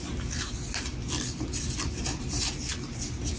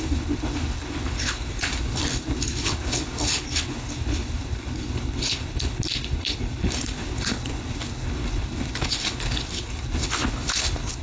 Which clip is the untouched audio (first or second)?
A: first